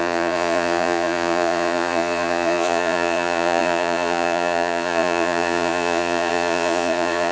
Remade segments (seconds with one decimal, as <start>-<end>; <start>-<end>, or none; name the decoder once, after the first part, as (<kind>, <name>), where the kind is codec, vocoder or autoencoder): 0.0-7.3 (vocoder, Vocos)